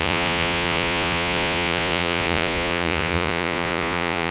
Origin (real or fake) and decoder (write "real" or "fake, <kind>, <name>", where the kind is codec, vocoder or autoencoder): fake, vocoder, Vocos